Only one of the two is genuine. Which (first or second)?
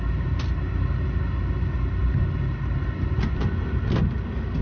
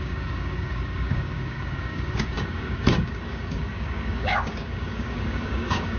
first